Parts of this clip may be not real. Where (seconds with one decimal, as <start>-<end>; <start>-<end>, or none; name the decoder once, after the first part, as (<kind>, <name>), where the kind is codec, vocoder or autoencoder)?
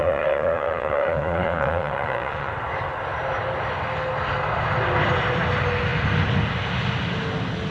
0.0-2.5 (vocoder, Vocos)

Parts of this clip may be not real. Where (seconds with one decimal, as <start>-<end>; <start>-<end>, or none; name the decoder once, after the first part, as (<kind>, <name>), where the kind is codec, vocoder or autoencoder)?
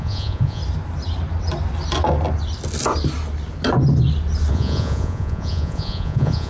0.0-0.6 (vocoder, Vocos); 4.5-6.5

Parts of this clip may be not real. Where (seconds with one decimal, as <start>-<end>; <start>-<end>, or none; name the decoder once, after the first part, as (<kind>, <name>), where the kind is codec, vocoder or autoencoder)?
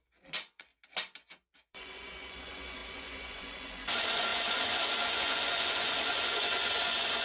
0.0-0.7 (vocoder, Vocos); 1.6-7.2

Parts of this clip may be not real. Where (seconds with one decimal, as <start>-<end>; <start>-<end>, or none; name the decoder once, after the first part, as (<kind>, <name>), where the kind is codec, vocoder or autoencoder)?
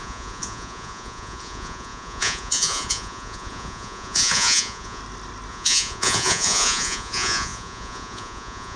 0.0-5.0 (vocoder, Vocos); 5.5-8.8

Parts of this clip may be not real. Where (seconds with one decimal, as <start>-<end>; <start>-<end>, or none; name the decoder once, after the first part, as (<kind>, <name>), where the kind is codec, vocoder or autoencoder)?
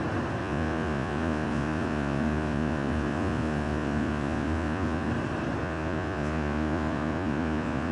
0.4-5.1 (vocoder, Vocos); 5.6-7.9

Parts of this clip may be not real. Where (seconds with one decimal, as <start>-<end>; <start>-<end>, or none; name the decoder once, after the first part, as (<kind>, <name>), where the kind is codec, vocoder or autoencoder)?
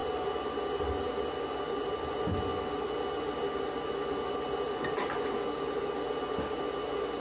none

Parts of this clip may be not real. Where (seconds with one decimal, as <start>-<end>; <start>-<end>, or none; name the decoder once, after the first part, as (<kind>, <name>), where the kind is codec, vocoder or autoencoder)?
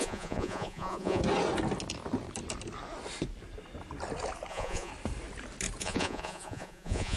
0.0-1.2 (vocoder, Vocos); 4.5-4.9; 5.8-7.2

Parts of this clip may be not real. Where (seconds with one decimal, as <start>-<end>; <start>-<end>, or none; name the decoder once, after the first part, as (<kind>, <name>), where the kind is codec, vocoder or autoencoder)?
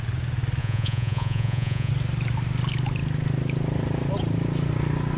0.6-1.9 (vocoder, Vocos)